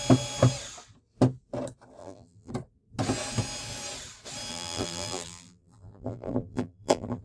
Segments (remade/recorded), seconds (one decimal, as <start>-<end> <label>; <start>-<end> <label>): 0.0-2.0 recorded; 2.0-2.5 remade; 2.5-4.5 recorded; 4.5-7.2 remade